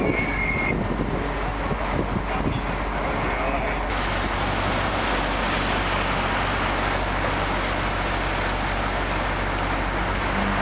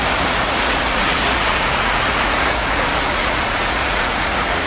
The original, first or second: first